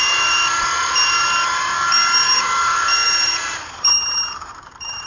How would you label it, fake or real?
fake